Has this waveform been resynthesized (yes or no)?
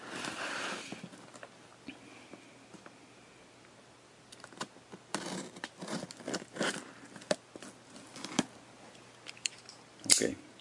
no